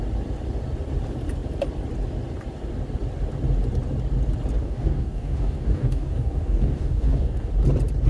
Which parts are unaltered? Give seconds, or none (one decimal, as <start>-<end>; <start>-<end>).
0.0-4.6; 7.5-8.1